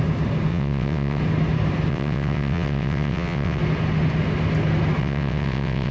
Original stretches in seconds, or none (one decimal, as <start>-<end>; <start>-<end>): 0.0-0.5; 1.2-1.9; 3.6-5.0